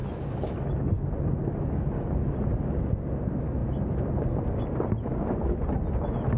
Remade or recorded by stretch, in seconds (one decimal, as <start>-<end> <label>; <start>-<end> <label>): 0.0-0.9 remade; 0.9-6.4 recorded